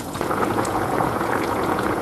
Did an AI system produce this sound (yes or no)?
yes